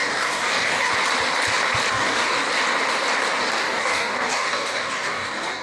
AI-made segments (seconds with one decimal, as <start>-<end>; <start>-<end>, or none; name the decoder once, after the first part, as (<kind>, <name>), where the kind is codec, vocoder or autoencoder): 0.0-0.9 (codec, DAC); 1.9-2.4; 3.4-5.6